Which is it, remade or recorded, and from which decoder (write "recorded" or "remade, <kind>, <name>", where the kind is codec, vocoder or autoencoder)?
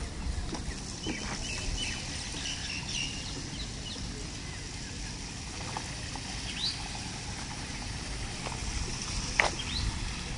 recorded